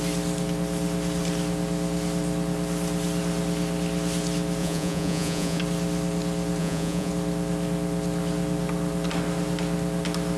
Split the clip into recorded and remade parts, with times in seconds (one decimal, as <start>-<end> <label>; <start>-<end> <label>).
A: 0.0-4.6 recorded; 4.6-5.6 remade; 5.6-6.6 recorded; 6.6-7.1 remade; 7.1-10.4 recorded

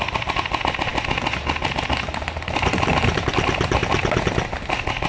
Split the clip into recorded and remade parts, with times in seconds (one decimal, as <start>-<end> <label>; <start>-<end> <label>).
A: 0.0-5.1 recorded

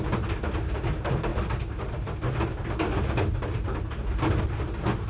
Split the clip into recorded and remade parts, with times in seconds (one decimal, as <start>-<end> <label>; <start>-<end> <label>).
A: 0.0-5.1 recorded

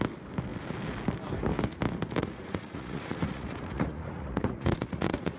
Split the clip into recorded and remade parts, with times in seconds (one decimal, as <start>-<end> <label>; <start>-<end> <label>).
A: 0.0-2.2 recorded; 2.2-5.4 remade

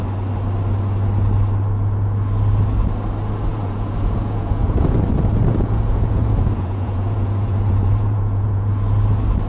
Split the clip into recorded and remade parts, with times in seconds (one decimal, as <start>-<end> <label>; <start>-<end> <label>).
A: 0.0-3.5 recorded; 3.5-5.0 remade; 5.0-5.5 recorded; 5.5-8.7 remade; 8.7-9.5 recorded